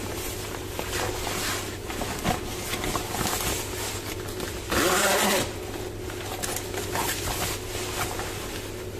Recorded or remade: recorded